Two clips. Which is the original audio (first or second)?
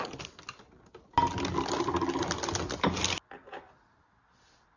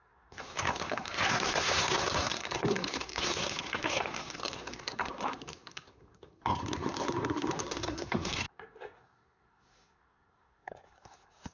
first